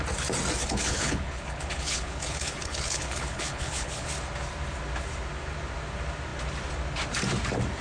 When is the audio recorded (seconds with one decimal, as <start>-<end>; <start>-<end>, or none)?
0.0-0.6; 4.1-7.8